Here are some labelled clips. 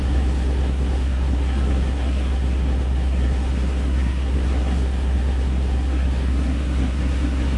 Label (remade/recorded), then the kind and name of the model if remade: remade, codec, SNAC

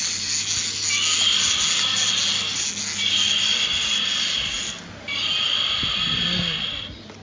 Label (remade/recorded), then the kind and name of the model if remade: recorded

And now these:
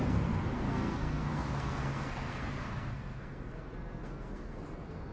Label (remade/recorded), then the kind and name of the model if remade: remade, codec, SNAC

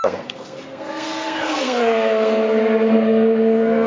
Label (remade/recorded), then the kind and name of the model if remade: remade, codec, SNAC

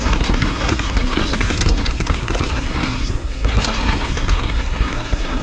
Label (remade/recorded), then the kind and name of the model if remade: remade, codec, SNAC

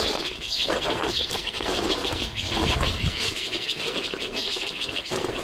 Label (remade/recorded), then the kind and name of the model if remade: remade, codec, SNAC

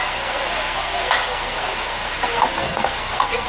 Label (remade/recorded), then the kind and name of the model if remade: remade, codec, SNAC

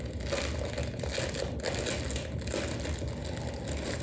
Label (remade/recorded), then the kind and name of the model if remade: recorded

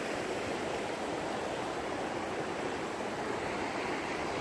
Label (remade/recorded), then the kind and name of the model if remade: recorded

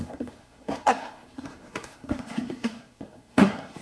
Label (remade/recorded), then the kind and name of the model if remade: remade, codec, SNAC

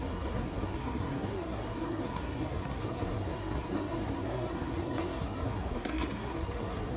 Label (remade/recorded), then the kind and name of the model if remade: remade, codec, SNAC